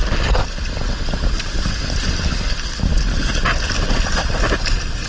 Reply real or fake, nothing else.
real